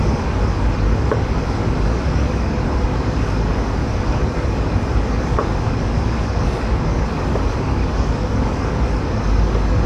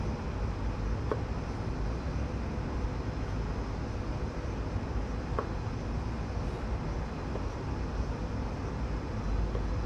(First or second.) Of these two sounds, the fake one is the first